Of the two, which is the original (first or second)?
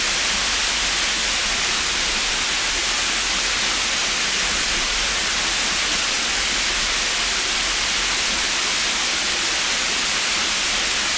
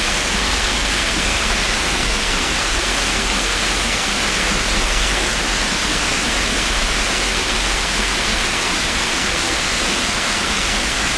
first